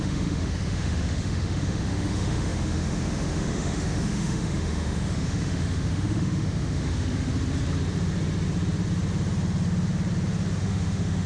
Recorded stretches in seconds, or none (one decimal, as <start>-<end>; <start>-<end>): 7.3-10.6